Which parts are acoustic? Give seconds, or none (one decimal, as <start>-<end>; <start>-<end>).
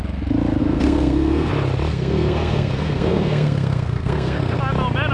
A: 0.0-0.6; 1.5-1.9; 4.6-5.1